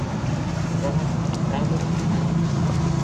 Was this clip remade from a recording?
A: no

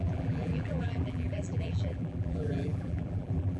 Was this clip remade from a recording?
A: yes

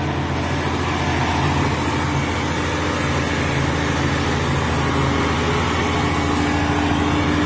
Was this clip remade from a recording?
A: no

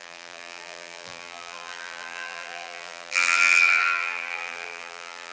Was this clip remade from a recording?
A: yes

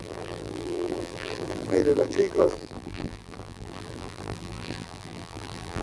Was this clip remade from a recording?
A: yes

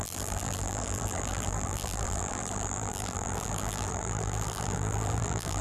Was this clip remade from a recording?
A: yes